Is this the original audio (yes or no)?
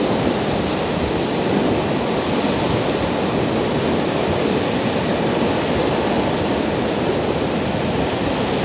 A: yes